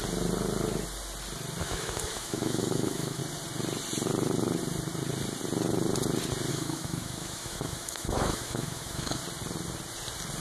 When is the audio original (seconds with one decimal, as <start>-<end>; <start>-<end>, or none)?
0.0-1.6; 3.2-6.5; 9.2-10.4